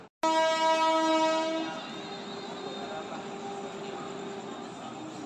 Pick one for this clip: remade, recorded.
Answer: recorded